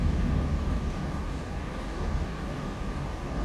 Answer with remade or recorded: remade